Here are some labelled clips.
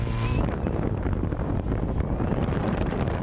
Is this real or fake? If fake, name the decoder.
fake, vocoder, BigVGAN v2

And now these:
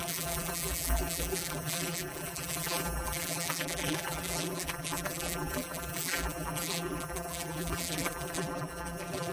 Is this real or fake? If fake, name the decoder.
fake, vocoder, BigVGAN v2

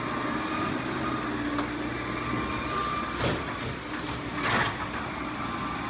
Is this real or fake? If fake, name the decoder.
real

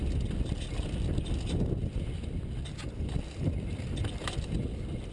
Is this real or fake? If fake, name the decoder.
real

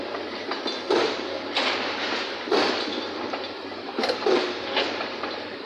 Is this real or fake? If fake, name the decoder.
fake, vocoder, BigVGAN v2